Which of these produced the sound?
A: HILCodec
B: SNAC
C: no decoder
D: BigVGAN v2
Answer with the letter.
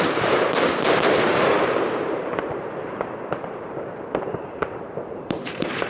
D